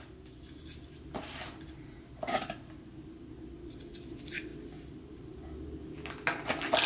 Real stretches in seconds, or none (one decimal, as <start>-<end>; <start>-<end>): 0.0-6.9